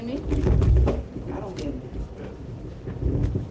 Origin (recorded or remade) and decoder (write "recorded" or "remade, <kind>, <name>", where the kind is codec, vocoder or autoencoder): recorded